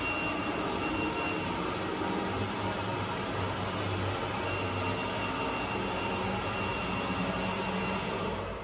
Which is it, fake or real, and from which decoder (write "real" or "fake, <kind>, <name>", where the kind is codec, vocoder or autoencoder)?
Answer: real